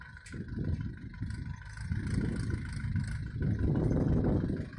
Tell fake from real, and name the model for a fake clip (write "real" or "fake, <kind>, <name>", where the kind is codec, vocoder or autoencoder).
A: real